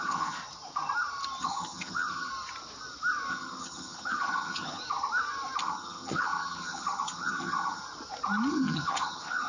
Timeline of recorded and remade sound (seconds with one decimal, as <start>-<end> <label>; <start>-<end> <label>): 0.0-0.4 remade; 0.4-1.4 recorded; 1.4-2.3 remade; 2.3-3.3 recorded; 3.3-4.8 remade; 4.8-5.6 recorded; 5.6-7.8 remade; 7.8-8.5 recorded; 8.5-9.5 remade